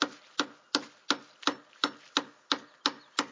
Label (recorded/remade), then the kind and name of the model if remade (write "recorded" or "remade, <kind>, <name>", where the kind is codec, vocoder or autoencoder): recorded